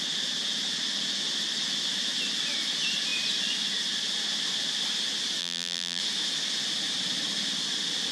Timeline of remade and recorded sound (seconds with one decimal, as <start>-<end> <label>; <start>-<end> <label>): 0.0-5.4 recorded; 5.4-6.0 remade; 6.0-8.1 recorded